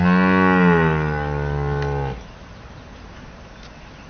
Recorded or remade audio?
recorded